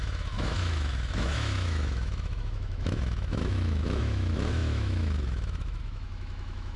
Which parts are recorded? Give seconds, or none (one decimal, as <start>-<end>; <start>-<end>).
none